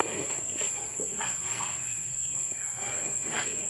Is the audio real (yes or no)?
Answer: no